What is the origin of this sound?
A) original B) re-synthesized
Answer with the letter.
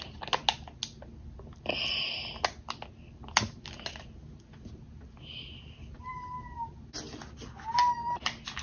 A